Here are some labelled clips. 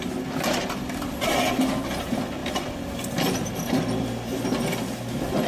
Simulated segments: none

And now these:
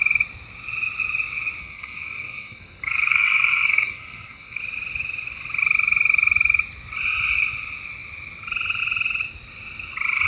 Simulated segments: 1.6-4.6 (codec, SNAC)

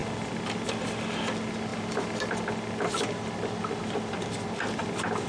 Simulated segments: none

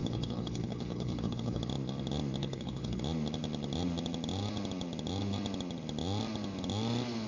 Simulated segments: 0.0-1.6 (codec, HILCodec); 2.4-3.0

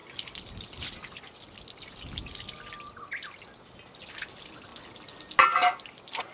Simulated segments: none

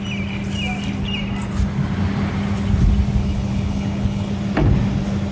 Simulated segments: 3.2-4.3 (codec, HILCodec)

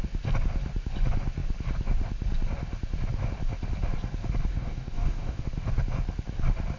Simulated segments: 4.5-5.4 (codec, DAC)